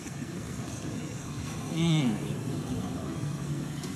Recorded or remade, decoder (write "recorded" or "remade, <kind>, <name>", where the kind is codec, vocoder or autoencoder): remade, codec, SNAC